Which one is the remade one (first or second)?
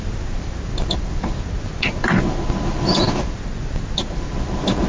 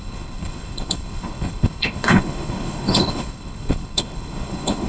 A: second